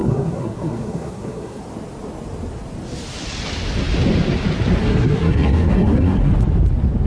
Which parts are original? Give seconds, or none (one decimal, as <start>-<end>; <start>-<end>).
1.6-4.8; 6.3-7.1